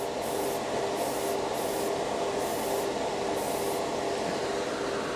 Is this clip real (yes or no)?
yes